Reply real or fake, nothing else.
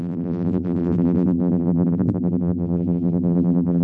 fake